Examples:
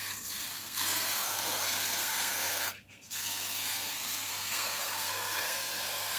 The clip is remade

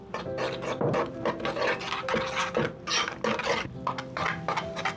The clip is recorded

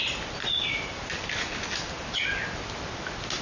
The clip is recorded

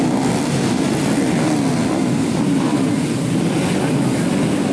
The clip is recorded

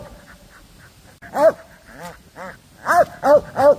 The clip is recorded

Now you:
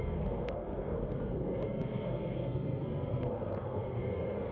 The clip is remade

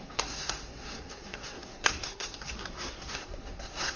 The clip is remade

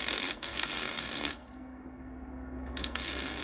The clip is remade